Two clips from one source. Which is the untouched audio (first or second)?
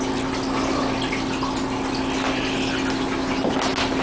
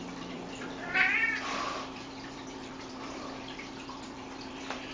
first